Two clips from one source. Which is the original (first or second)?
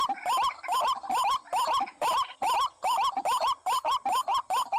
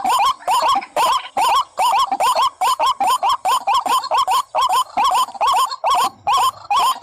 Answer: first